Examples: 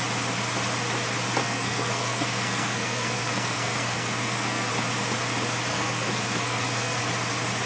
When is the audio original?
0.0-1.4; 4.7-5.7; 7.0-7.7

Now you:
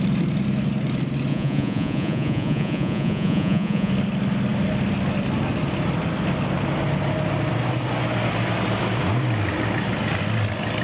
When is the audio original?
0.0-1.3; 3.9-10.8